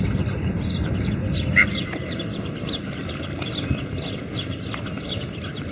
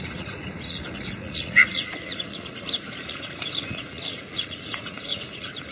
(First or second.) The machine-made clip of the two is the second